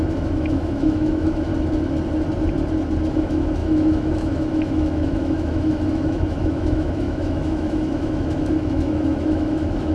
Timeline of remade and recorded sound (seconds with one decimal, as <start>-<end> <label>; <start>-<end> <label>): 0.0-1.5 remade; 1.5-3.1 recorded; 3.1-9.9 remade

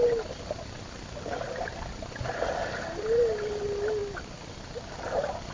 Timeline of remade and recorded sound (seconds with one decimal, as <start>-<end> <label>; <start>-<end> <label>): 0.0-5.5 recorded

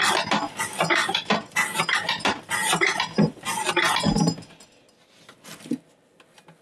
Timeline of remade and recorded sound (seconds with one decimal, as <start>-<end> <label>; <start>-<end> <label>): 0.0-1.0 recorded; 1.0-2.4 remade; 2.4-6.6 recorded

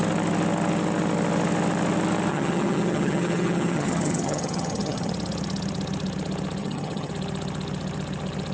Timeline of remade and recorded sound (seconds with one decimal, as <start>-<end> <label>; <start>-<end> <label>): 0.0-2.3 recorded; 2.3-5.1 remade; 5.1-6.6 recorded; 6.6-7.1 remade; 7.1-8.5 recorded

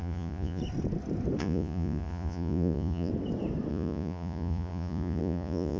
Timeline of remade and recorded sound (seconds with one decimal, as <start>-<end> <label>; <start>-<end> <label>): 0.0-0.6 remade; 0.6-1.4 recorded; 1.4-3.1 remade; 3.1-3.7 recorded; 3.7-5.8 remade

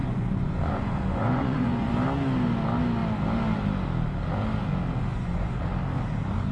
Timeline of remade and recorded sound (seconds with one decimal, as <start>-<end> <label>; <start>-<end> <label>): 0.0-1.9 remade; 1.9-5.1 recorded; 5.1-5.6 remade; 5.6-6.5 recorded